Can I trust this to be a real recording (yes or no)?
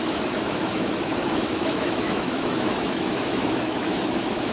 no